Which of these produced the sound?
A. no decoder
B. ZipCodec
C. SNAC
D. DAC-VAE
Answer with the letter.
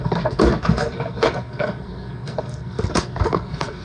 C